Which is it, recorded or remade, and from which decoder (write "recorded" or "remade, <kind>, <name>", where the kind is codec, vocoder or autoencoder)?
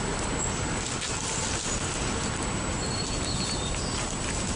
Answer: recorded